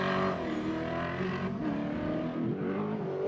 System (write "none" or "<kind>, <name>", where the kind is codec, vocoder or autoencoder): none